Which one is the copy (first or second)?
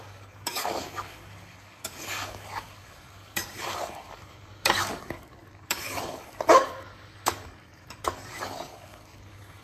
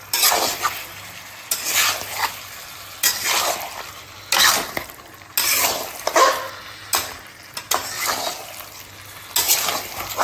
first